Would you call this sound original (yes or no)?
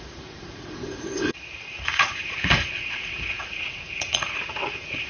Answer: no